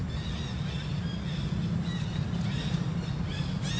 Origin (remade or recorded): recorded